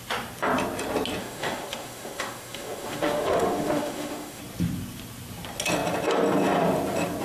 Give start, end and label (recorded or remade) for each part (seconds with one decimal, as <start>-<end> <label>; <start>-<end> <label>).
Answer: 0.0-1.2 recorded; 1.2-4.4 remade; 4.4-7.2 recorded